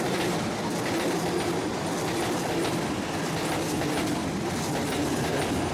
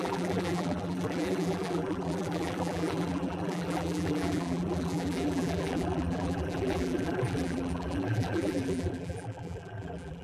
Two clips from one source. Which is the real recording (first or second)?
first